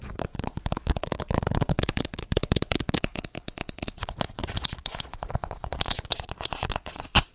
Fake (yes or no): yes